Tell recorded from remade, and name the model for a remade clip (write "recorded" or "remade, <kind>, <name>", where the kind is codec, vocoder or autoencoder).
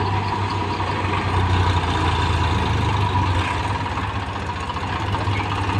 recorded